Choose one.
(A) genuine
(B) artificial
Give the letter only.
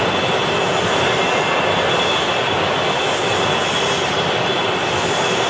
A